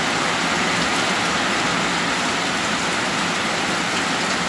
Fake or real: real